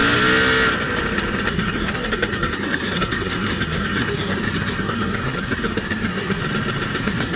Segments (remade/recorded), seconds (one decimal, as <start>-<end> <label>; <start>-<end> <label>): 0.0-1.5 recorded; 1.5-6.4 remade; 6.4-7.0 recorded; 7.0-7.4 remade